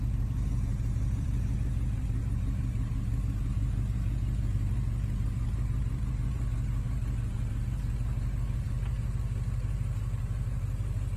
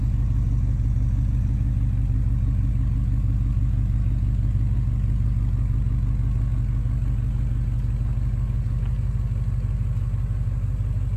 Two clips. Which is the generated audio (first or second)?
first